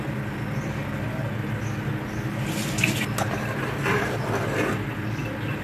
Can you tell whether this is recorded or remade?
recorded